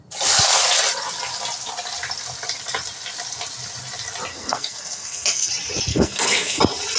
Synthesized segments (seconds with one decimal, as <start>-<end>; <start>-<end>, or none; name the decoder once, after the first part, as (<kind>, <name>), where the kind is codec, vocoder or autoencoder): 4.3-5.5 (codec, SNAC); 5.9-6.6